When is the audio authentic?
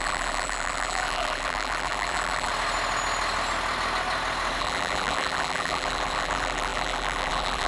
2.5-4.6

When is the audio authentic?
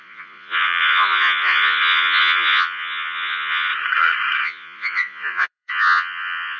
3.7-4.4